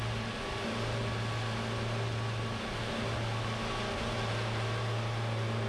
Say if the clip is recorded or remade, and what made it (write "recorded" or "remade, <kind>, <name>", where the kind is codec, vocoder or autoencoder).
recorded